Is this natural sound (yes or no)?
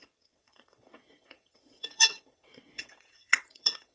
no